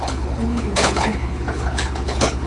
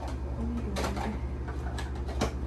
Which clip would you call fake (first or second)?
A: first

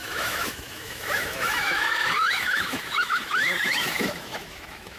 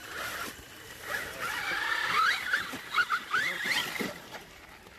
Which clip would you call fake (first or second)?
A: first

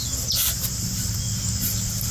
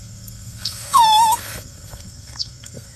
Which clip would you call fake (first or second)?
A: second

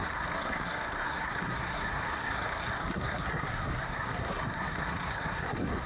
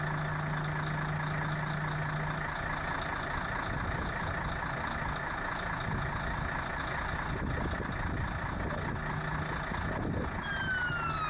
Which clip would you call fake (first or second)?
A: first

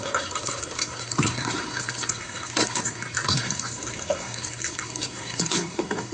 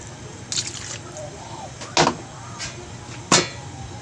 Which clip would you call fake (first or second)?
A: first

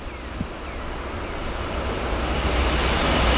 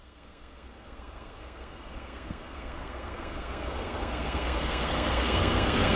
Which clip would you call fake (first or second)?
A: second